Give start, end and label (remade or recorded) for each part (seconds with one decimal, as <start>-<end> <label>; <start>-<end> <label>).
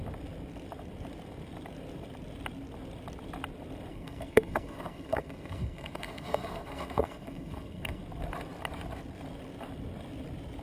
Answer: 0.0-3.9 recorded; 3.9-8.0 remade; 8.0-10.6 recorded